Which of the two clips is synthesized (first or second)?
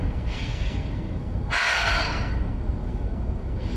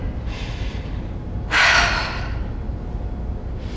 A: first